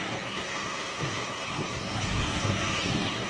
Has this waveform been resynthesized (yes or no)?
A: yes